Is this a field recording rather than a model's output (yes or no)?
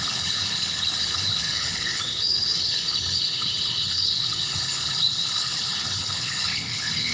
no